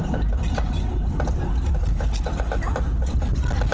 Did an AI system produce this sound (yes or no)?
no